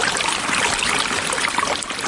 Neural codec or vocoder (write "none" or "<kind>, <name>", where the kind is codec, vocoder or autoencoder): none